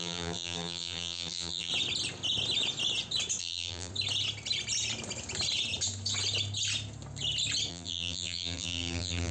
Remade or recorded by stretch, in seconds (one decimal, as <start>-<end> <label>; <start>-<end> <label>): 0.0-1.7 remade; 1.7-3.4 recorded; 3.4-3.9 remade; 3.9-7.7 recorded; 7.7-9.3 remade